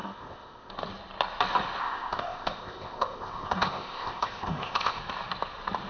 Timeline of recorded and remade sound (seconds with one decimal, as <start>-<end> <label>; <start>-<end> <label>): 0.0-0.7 remade; 0.7-1.8 recorded; 1.8-5.0 remade; 5.0-5.9 recorded